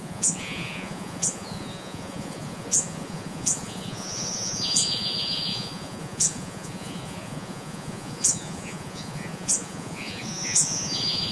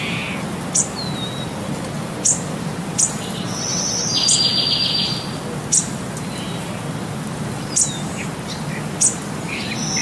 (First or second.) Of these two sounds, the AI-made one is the first